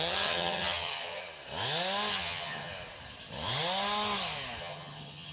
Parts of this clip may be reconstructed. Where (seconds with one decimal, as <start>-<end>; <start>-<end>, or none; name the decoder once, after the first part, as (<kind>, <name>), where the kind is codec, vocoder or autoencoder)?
0.0-1.2 (vocoder, HiFi-GAN); 2.1-2.7; 4.6-5.3